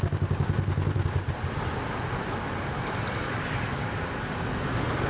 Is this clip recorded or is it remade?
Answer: recorded